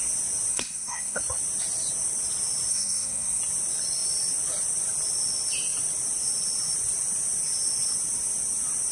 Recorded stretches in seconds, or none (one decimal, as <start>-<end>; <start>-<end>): 0.0-0.5; 1.2-2.7; 3.4-8.9